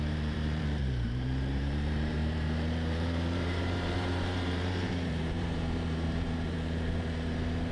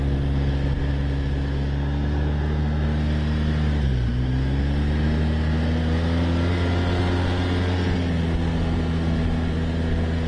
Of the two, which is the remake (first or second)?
first